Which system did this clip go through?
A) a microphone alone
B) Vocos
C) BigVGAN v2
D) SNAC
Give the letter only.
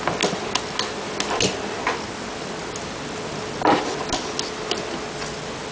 A